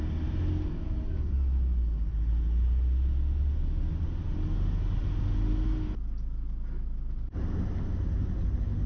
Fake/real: real